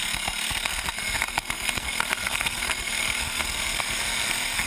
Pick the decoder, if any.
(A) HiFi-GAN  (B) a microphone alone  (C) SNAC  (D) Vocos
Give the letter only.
C